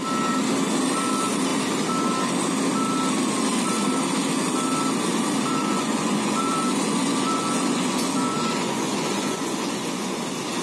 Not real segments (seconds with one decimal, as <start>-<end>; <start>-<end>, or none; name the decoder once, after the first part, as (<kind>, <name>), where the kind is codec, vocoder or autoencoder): 5.5-10.2 (vocoder, Vocos)